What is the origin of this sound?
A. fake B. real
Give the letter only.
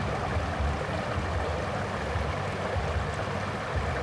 B